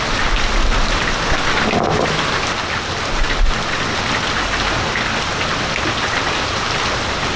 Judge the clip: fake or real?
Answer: real